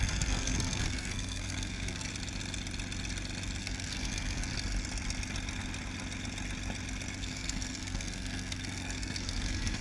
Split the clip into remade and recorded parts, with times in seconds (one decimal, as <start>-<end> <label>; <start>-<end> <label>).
0.0-2.1 remade; 2.1-3.6 recorded; 3.6-4.5 remade; 4.5-7.2 recorded; 7.2-9.8 remade

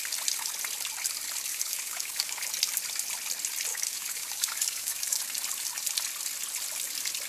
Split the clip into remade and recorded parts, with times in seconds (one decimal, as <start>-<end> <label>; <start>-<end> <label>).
0.0-1.5 recorded; 1.5-2.4 remade; 2.4-3.7 recorded; 3.7-5.2 remade; 5.2-7.3 recorded

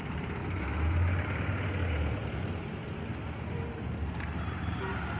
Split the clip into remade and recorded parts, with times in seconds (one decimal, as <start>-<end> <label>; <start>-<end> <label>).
0.0-0.4 remade; 0.4-3.5 recorded; 3.5-5.2 remade

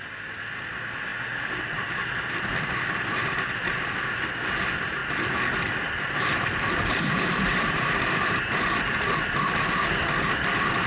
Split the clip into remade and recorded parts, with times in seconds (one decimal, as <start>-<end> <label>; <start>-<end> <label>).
0.0-2.0 remade; 2.0-3.2 recorded; 3.2-5.0 remade; 5.0-5.7 recorded; 5.7-10.9 remade